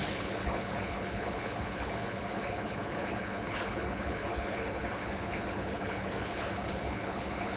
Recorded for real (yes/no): no